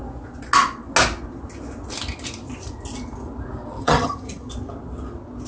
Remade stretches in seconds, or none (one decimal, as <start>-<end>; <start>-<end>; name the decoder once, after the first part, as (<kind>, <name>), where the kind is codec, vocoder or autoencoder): 3.8-4.5 (vocoder, HiFi-GAN)